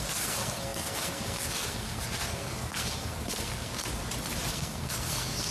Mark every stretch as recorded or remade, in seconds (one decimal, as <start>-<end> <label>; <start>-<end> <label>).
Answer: 0.0-3.8 remade; 3.8-4.5 recorded; 4.5-5.5 remade